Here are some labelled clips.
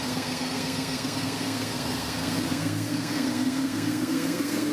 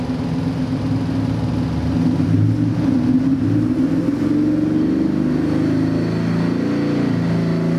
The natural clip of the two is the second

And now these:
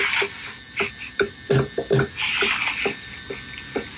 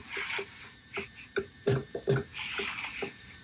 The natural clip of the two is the first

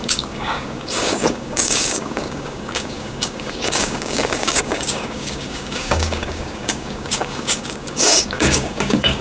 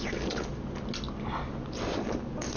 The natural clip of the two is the second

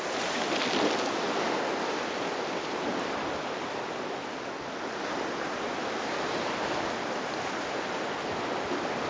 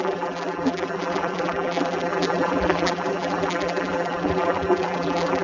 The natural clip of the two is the first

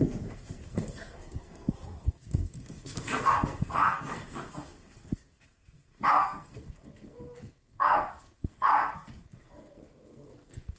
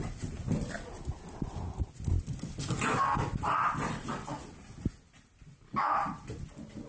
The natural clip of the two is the second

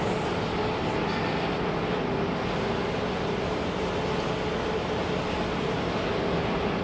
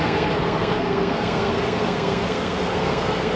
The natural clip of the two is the first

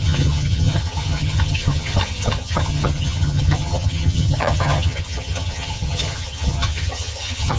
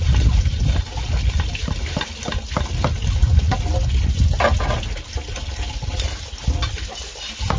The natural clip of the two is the second